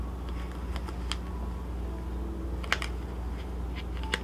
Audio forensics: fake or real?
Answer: real